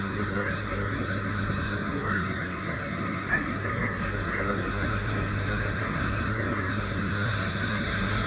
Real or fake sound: fake